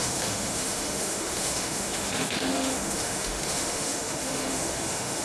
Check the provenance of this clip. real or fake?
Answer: fake